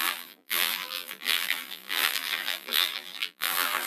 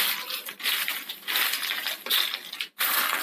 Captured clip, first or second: second